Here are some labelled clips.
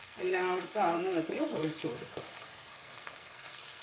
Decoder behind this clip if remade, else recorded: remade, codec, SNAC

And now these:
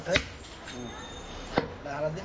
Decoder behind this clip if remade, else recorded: recorded